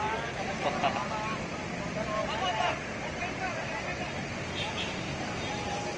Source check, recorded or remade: recorded